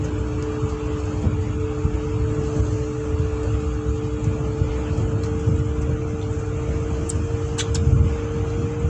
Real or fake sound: real